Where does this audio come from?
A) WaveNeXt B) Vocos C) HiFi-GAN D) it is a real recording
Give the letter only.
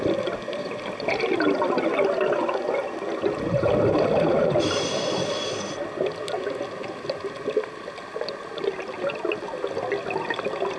D